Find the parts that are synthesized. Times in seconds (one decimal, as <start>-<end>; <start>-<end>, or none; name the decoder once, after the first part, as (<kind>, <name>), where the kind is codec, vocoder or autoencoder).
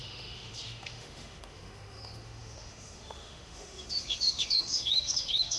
0.0-5.6 (autoencoder, DAC-VAE)